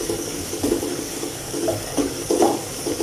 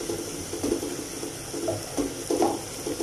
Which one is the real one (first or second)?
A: second